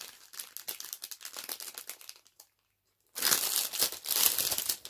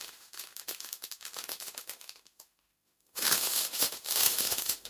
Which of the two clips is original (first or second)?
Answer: first